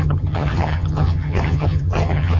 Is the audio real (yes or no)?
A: no